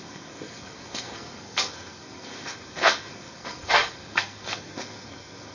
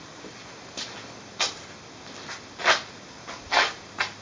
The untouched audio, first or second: second